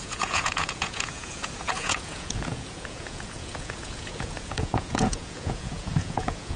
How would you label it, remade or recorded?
remade